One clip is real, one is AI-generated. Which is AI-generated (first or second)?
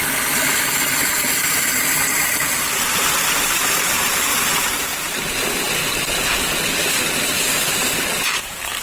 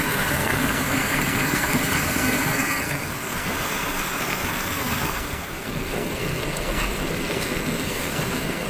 second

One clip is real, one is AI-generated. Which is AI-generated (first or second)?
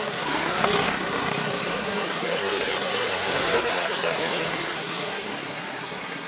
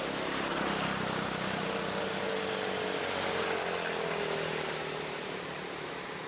first